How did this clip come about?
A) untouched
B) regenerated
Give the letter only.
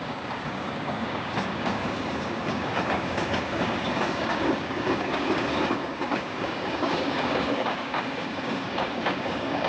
B